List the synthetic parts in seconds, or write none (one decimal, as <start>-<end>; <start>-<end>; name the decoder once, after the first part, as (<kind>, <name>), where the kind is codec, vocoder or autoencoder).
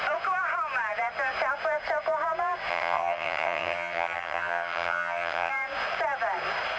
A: 2.7-5.5 (vocoder, HiFi-GAN)